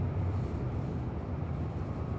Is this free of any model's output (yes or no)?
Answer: no